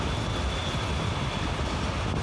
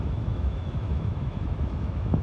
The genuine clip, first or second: first